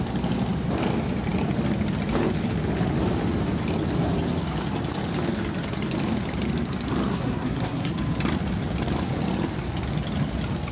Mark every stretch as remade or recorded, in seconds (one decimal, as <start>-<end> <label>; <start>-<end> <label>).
0.0-7.1 recorded; 7.1-7.9 remade; 7.9-10.7 recorded